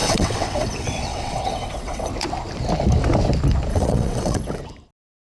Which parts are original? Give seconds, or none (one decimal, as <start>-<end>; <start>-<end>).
2.1-3.7; 4.6-5.4